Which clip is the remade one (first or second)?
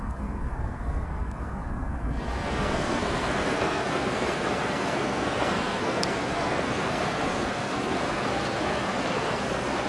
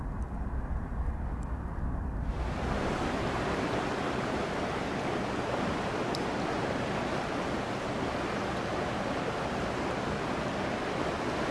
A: first